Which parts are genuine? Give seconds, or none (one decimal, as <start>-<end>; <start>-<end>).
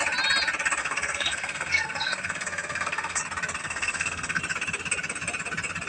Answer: 0.0-0.8; 3.2-3.6; 4.4-5.9